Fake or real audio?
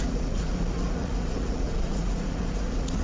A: fake